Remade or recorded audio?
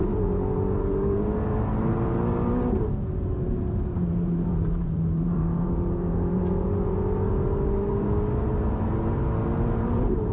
remade